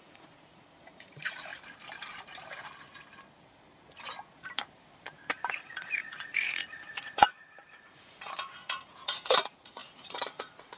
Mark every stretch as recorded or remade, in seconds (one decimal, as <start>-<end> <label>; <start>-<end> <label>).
0.0-1.5 remade; 1.5-5.6 recorded; 5.6-10.8 remade